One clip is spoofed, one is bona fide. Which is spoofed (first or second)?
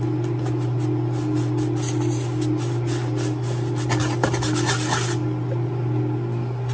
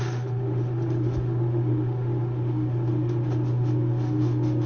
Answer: second